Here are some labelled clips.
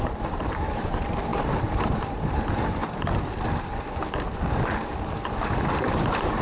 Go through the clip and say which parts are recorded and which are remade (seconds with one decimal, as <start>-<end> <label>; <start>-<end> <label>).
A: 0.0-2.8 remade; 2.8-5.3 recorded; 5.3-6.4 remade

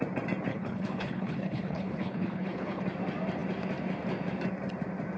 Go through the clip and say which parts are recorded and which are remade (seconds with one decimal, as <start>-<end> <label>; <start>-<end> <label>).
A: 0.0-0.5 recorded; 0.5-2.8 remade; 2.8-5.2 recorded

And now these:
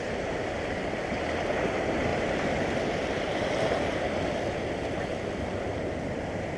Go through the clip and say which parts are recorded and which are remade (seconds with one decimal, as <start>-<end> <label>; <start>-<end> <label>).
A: 0.0-6.6 recorded